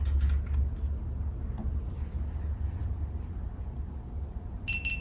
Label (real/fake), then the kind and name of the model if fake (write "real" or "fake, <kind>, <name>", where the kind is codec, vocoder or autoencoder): real